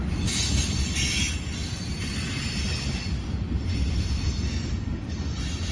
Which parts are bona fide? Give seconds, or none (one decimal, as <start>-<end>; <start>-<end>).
0.0-5.7